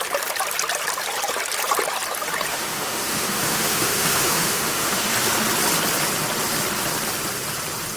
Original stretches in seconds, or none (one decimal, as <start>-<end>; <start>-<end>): 0.0-2.5; 5.1-8.0